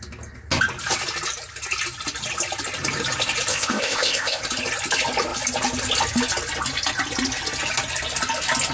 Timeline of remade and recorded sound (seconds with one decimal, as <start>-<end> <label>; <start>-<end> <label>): 0.0-3.5 recorded; 3.5-4.4 remade; 4.4-8.7 recorded